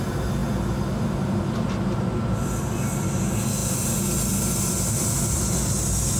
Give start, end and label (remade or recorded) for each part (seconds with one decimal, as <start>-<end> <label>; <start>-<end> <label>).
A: 0.0-6.2 recorded